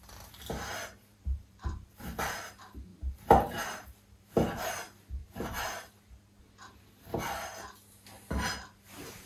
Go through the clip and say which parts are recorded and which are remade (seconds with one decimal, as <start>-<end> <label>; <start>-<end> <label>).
0.0-1.1 recorded; 1.1-2.0 remade; 2.0-2.9 recorded; 2.9-4.3 remade; 4.3-5.2 recorded; 5.2-6.4 remade; 6.4-9.3 recorded